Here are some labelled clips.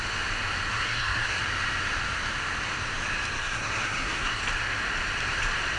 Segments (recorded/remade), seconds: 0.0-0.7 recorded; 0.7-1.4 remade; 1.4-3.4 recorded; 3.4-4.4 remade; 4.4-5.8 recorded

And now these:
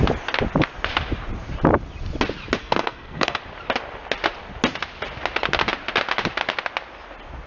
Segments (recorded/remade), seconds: 0.0-2.6 recorded; 2.6-3.4 remade; 3.4-7.5 recorded

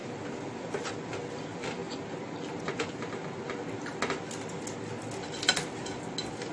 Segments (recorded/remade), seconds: 0.0-6.5 recorded

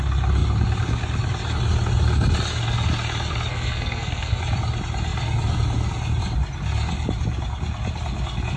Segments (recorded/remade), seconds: 0.0-3.5 recorded; 3.5-4.4 remade; 4.4-8.6 recorded